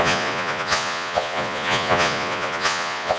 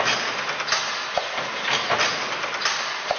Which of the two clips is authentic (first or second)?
second